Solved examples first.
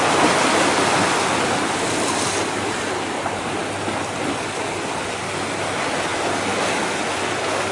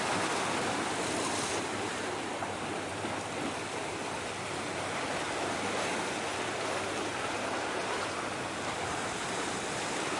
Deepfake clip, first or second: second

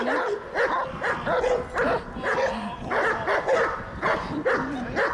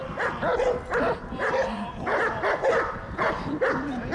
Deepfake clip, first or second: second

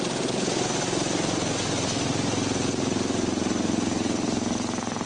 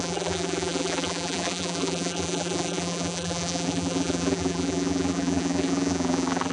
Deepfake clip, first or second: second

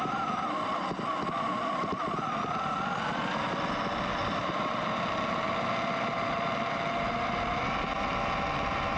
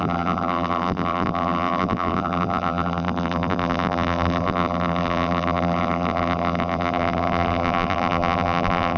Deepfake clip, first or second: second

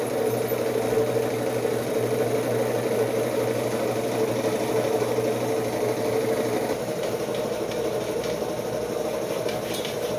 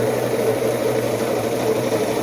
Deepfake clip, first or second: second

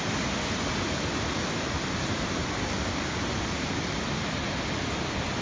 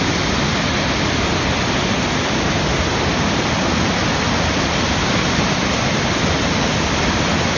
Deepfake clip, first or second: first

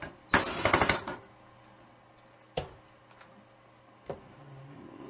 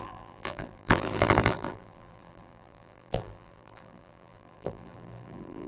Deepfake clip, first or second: second